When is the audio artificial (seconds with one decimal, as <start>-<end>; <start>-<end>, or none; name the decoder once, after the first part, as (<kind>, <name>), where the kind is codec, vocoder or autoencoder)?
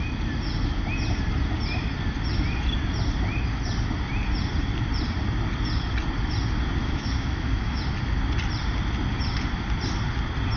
6.8-7.8 (autoencoder, DAC-VAE)